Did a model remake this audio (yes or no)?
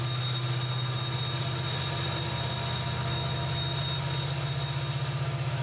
no